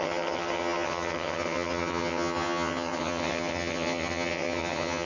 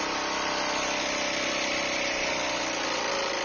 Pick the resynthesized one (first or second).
first